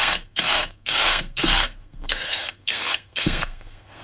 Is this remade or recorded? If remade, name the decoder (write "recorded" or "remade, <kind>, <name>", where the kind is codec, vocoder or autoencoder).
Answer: remade, codec, SNAC